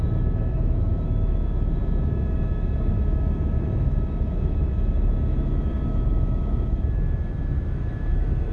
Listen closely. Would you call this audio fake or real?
fake